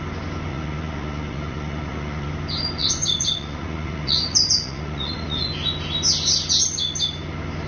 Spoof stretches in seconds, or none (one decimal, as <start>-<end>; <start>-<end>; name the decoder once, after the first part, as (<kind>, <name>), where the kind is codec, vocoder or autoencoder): 0.5-2.3 (vocoder, Vocos); 2.8-5.5